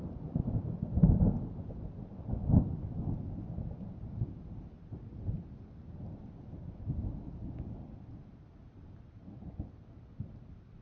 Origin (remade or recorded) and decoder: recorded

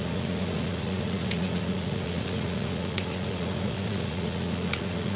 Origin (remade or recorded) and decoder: remade, vocoder, Vocos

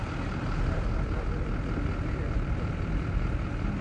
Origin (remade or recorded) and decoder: recorded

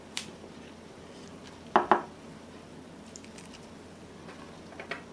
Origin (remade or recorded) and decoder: recorded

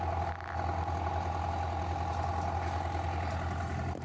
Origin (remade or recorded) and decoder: recorded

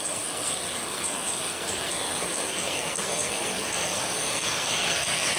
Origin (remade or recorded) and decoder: remade, codec, SNAC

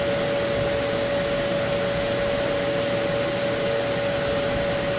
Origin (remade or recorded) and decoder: recorded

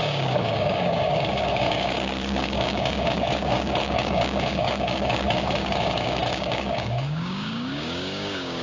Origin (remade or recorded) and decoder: remade, codec, DAC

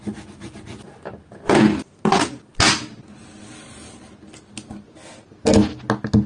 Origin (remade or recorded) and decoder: recorded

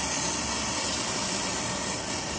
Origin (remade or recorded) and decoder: recorded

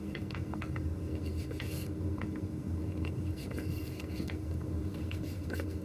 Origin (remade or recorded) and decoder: remade, codec, SNAC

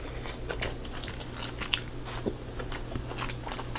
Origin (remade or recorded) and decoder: recorded